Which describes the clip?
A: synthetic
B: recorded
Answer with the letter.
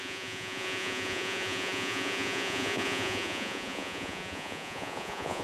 A